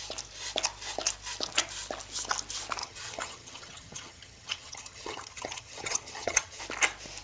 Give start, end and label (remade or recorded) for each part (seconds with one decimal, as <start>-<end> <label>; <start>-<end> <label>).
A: 0.0-2.8 recorded; 2.8-6.6 remade; 6.6-7.2 recorded

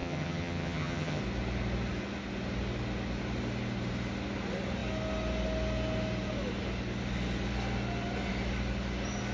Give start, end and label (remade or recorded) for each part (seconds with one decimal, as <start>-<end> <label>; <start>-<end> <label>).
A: 0.0-1.2 remade; 1.2-9.3 recorded

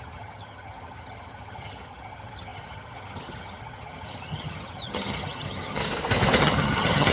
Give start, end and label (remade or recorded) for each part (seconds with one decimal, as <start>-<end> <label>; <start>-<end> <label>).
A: 0.0-5.8 remade; 5.8-6.4 recorded; 6.4-7.1 remade

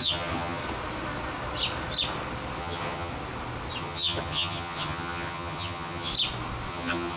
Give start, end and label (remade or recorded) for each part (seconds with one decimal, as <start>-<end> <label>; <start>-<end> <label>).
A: 0.0-0.6 remade; 0.6-2.6 recorded; 2.6-3.1 remade; 3.1-3.8 recorded; 3.8-6.1 remade; 6.1-6.7 recorded; 6.7-7.2 remade

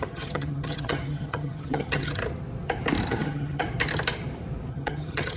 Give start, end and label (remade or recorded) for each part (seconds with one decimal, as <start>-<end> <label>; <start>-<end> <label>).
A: 0.0-2.2 remade; 2.2-3.1 recorded; 3.1-3.6 remade; 3.6-4.7 recorded; 4.7-5.4 remade

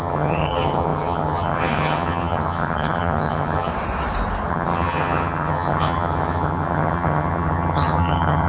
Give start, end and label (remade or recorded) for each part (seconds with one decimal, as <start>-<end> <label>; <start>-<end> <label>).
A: 0.0-3.7 remade; 3.7-4.5 recorded; 4.5-8.5 remade

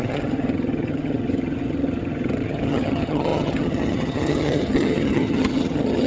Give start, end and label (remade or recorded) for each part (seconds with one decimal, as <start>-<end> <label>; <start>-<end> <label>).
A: 0.0-6.1 remade